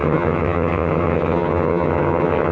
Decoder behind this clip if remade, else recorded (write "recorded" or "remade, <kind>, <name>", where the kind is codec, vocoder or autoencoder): remade, vocoder, HiFi-GAN